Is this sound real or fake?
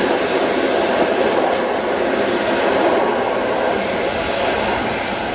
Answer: real